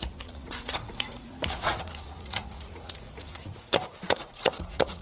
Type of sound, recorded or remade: remade